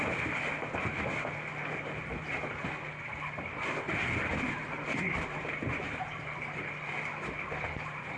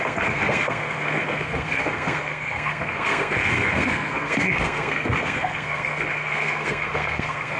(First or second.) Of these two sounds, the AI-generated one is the second